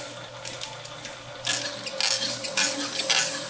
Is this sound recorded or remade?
recorded